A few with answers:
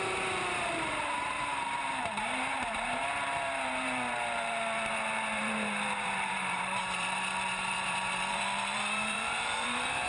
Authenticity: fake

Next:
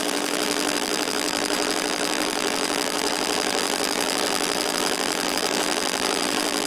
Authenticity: fake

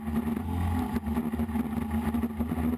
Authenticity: real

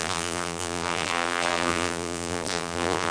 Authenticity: fake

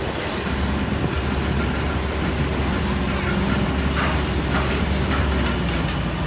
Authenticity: real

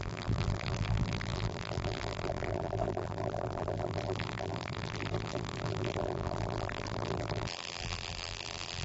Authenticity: fake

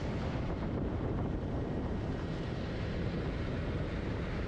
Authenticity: fake